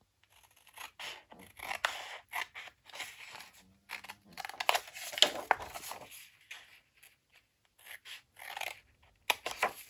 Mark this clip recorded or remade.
recorded